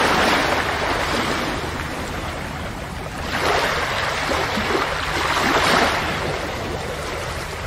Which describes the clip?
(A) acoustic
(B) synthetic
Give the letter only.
A